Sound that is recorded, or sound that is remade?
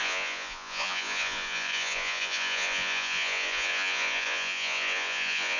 remade